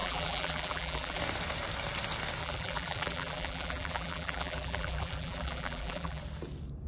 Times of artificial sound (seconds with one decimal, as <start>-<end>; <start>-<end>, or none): 0.0-1.2; 2.4-6.2